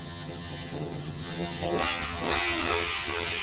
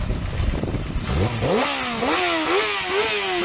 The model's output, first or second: first